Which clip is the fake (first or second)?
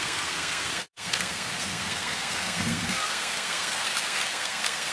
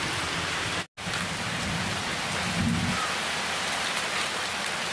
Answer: first